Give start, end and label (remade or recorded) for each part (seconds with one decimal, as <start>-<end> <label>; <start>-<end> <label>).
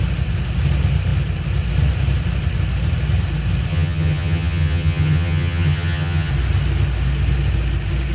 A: 0.0-3.7 recorded; 3.7-6.3 remade; 6.3-8.1 recorded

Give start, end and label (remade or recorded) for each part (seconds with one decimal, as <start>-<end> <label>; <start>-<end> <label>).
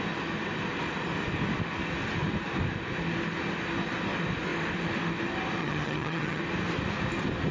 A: 0.0-5.6 recorded; 5.6-6.4 remade; 6.4-7.5 recorded